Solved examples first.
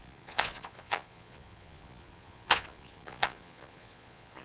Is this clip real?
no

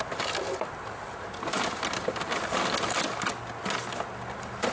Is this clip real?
yes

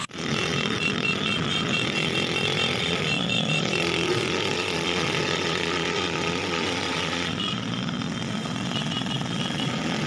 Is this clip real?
no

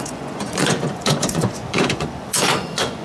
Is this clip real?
no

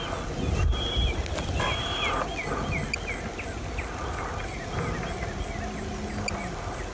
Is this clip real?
yes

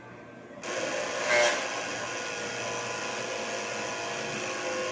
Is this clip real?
yes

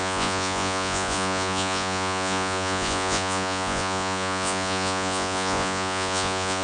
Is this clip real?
no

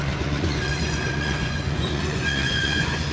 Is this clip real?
no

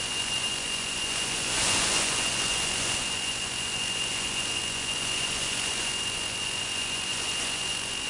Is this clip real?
no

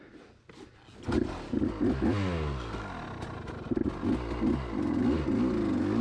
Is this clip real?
yes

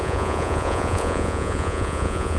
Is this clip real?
no